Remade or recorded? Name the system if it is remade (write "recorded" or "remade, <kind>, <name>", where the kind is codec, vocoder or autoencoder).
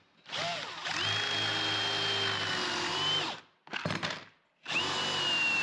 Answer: recorded